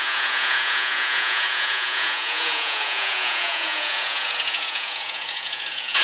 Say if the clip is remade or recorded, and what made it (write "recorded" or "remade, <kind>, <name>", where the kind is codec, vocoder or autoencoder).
remade, vocoder, Vocos